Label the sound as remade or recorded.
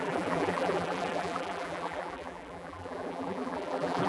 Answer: remade